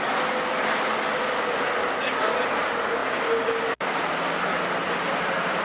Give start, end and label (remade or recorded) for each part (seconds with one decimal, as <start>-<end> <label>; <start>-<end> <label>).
0.0-5.6 recorded